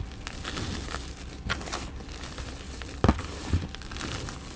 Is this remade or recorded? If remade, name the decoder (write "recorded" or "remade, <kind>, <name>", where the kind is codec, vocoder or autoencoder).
recorded